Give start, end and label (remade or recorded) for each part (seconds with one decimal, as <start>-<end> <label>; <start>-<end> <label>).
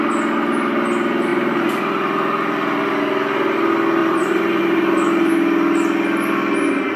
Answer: 0.0-1.3 recorded; 1.3-1.8 remade; 1.8-4.0 recorded; 4.0-5.3 remade; 5.3-7.0 recorded